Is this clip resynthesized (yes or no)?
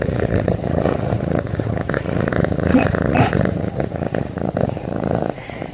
yes